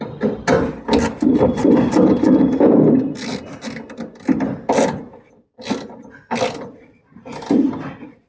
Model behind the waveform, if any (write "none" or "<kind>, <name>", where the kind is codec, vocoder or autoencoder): none